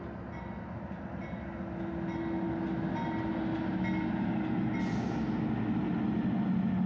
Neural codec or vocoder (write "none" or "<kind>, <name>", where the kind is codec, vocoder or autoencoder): none